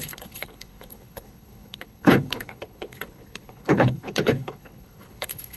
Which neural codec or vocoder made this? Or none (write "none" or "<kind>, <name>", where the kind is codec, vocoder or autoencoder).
codec, HILCodec